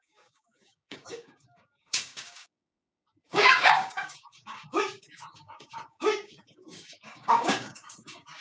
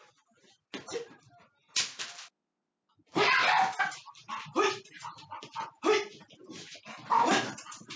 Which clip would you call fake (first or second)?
first